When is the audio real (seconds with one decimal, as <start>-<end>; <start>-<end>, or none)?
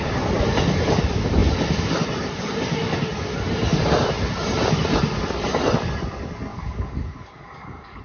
0.0-6.5